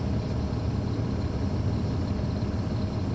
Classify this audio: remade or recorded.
recorded